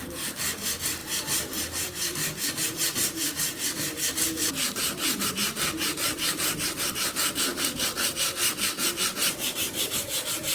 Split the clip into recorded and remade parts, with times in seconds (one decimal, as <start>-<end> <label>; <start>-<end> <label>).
0.0-10.5 remade

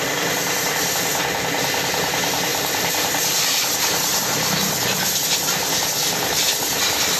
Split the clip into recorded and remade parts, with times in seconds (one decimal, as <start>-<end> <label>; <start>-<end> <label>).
0.0-2.5 recorded; 2.5-4.2 remade; 4.2-7.2 recorded

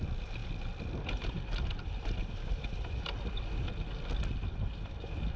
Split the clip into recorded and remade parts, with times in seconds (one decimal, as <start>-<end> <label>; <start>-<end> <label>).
0.0-0.4 recorded; 0.4-2.3 remade; 2.3-5.4 recorded

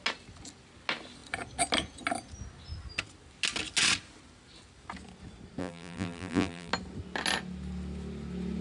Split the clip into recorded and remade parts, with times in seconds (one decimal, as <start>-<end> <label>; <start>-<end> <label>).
0.0-5.6 recorded; 5.6-6.7 remade; 6.7-8.6 recorded

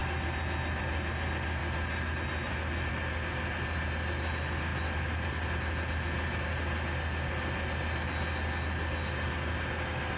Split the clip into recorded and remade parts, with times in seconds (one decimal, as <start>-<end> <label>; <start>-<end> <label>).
0.0-10.2 recorded